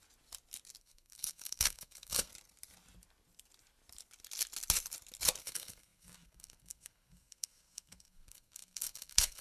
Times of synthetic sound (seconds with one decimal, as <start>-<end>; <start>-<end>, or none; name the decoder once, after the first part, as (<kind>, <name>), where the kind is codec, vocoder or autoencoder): 0.8-2.3 (codec, SNAC); 5.4-9.4